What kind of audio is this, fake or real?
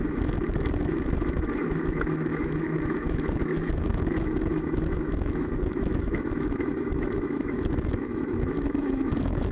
fake